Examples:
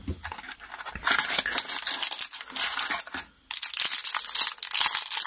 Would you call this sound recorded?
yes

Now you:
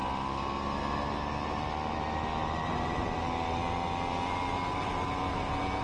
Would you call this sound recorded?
yes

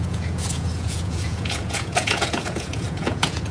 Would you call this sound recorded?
no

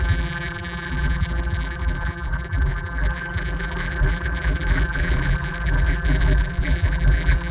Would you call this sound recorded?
no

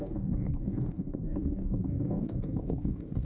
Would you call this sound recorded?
no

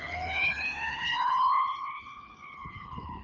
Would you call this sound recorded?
no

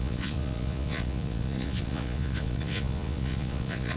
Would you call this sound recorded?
no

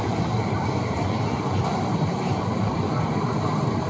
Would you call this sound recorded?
no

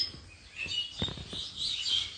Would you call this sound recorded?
yes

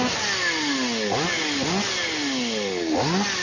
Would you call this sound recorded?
yes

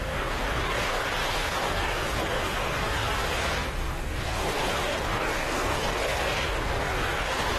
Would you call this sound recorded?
no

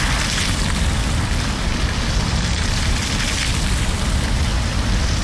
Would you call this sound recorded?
yes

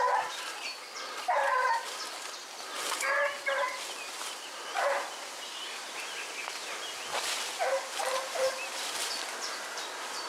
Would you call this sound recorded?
yes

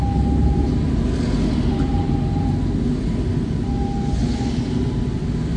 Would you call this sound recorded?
yes